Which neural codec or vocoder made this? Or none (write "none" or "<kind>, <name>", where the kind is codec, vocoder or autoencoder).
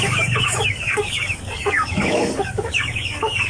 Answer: codec, DAC